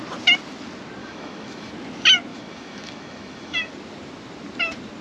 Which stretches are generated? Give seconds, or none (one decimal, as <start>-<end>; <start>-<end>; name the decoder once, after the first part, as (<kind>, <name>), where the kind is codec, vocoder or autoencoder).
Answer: 1.0-1.7 (autoencoder, DAC-VAE); 2.3-3.7